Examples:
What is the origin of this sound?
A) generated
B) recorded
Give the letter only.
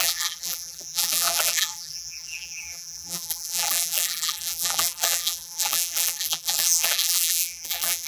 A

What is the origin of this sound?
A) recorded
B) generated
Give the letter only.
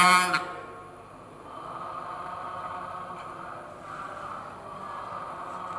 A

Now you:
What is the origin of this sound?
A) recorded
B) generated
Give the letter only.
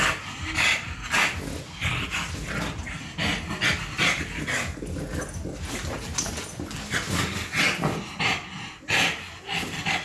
A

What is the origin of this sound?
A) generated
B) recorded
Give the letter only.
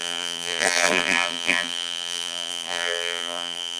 A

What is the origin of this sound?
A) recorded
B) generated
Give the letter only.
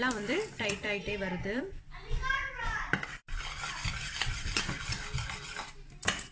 B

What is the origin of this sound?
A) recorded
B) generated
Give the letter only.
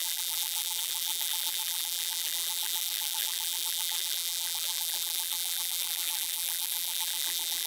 B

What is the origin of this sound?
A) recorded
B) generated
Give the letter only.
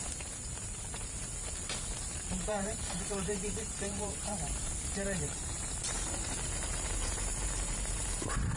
B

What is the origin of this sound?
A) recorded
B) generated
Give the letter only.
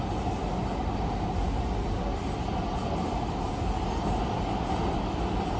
A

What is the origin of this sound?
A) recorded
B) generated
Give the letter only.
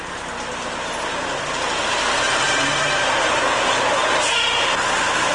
A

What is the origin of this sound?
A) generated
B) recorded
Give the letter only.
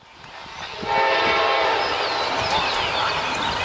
B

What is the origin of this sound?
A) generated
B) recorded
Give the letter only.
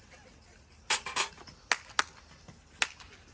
B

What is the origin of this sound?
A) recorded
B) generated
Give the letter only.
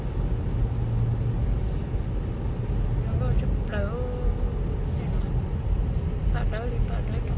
A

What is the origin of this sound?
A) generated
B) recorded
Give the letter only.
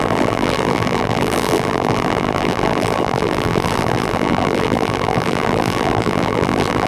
A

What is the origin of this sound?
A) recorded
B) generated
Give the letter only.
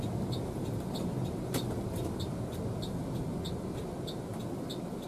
A